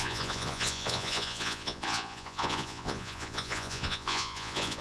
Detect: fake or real fake